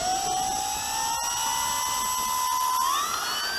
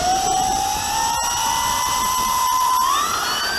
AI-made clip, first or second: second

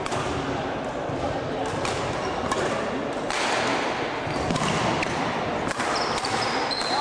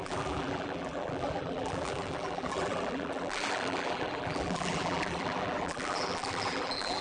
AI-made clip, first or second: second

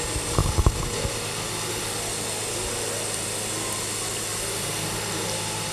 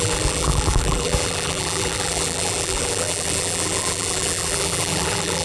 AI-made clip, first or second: second